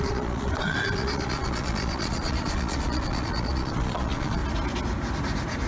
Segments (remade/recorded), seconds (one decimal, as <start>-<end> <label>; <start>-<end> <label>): 0.0-4.4 remade; 4.4-5.7 recorded